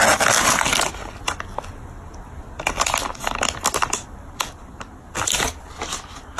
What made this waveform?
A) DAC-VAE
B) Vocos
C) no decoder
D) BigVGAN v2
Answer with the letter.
C